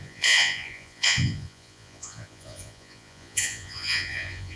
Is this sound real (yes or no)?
no